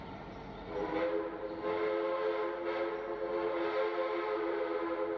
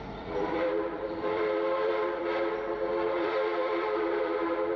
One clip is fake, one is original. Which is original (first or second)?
first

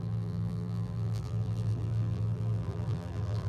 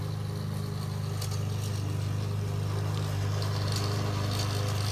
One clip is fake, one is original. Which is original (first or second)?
second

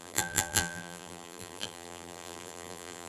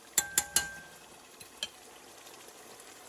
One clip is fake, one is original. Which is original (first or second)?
second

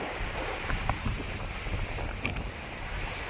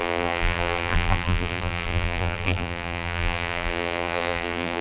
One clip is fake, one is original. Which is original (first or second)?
first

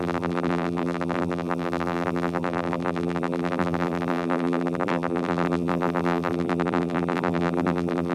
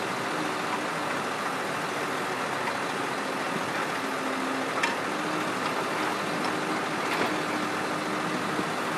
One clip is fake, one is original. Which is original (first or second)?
second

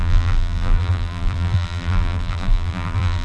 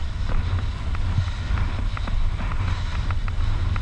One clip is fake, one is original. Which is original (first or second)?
second